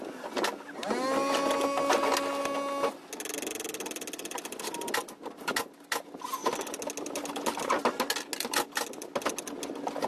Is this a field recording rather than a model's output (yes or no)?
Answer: yes